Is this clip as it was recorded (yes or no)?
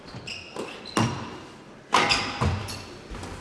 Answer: yes